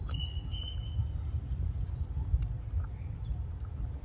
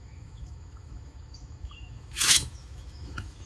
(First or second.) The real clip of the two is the first